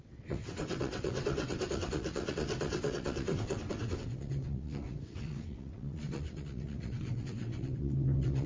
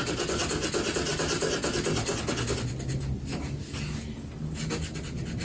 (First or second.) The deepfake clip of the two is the first